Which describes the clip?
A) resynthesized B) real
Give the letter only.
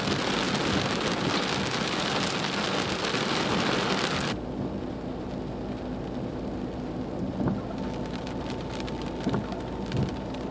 B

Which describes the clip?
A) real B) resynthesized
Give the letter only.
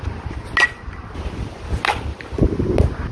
A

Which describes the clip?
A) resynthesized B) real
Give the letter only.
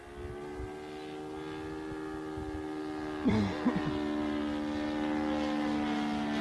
B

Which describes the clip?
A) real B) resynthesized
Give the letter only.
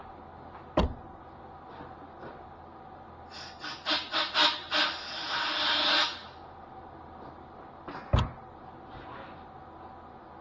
A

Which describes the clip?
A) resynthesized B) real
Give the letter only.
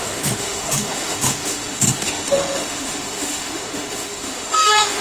A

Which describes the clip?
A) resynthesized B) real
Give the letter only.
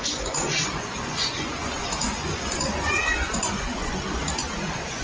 A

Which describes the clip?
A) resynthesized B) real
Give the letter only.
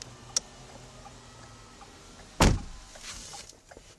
B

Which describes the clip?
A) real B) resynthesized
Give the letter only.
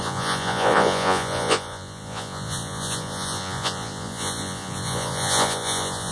B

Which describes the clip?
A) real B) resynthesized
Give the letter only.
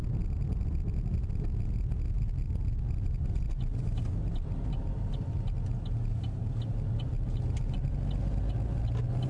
A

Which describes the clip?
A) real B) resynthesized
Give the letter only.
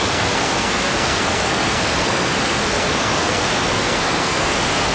B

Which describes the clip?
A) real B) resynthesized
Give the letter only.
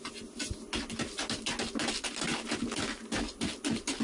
A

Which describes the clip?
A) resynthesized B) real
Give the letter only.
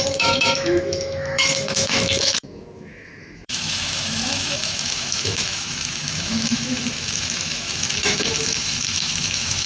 A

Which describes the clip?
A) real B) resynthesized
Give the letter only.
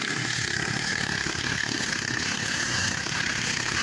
B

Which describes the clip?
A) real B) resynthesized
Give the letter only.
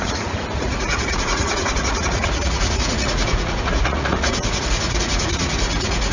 B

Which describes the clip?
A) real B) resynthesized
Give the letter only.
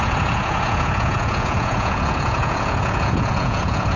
B